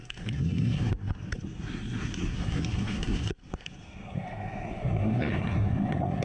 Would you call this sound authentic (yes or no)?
no